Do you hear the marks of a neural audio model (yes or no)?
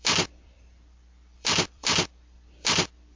yes